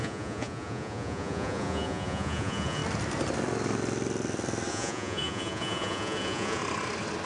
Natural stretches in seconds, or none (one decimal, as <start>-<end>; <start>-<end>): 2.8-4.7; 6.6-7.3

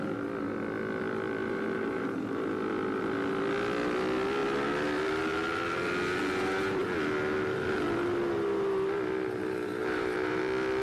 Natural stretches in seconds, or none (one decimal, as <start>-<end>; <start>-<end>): 0.0-1.4; 2.4-9.8; 10.4-10.8

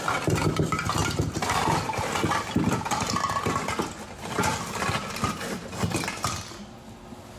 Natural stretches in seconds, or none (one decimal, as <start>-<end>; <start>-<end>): 0.0-7.4